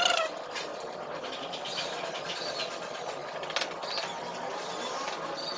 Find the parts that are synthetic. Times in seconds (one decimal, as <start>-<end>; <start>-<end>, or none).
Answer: none